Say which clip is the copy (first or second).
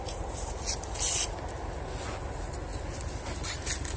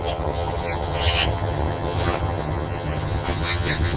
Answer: second